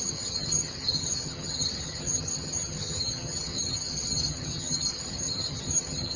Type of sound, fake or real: fake